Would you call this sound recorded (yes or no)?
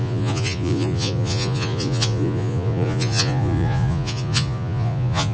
no